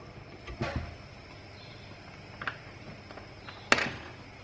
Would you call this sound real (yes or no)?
yes